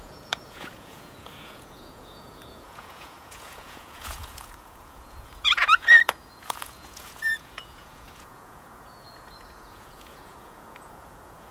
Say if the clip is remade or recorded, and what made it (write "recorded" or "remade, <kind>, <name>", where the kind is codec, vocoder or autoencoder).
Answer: remade, vocoder, Vocos